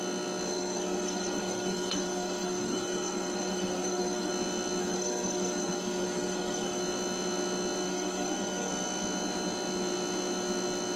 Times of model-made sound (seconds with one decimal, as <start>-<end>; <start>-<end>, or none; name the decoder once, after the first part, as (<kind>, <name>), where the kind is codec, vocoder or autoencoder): 0.5-4.3 (codec, SNAC); 4.8-6.8; 7.9-8.7